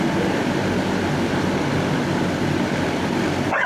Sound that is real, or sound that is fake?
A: real